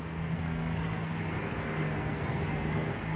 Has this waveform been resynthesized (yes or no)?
yes